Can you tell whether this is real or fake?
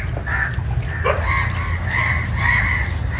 real